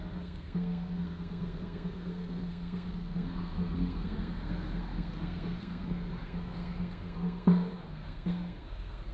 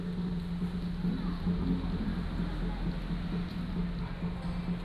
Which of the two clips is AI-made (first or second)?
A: first